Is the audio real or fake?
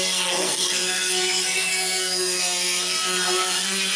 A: fake